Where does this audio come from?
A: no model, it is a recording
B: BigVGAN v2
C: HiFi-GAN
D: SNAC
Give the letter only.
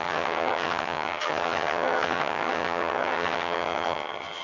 C